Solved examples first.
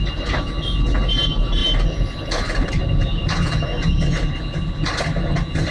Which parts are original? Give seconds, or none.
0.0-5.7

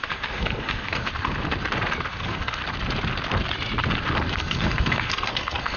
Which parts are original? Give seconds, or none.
1.1-2.1; 2.6-4.3

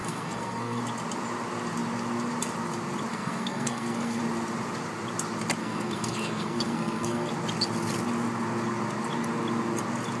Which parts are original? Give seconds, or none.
0.8-3.1; 4.2-5.6; 7.3-10.2

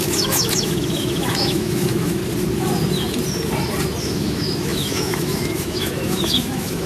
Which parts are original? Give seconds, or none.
2.2-4.0

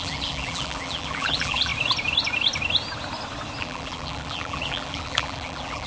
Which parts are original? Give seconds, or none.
1.7-3.6

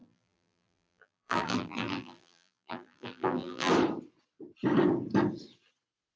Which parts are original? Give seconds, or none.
3.7-6.2

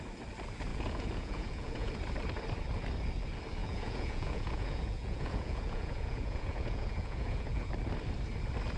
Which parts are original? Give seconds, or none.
0.0-0.7; 1.9-3.6; 7.7-8.8